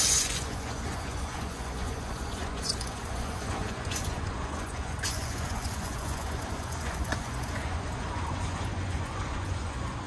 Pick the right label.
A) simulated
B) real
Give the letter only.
A